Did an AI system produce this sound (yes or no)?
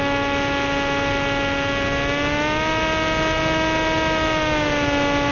no